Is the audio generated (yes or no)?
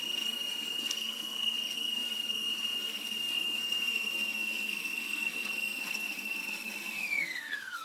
yes